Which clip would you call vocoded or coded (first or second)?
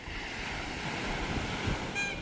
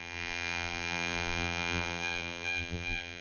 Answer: second